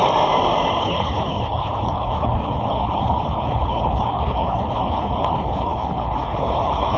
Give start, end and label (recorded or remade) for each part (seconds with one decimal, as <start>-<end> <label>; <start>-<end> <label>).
0.0-0.8 recorded; 0.8-7.0 remade